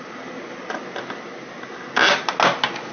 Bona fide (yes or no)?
yes